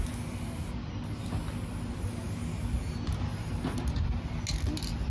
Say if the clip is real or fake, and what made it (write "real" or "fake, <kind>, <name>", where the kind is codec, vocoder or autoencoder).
real